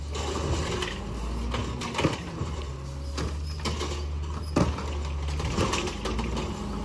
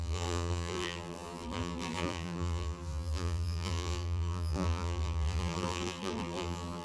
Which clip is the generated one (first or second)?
second